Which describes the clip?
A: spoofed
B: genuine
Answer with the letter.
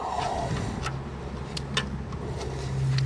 B